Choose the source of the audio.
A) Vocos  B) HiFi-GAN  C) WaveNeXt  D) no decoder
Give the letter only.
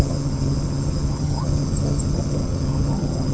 B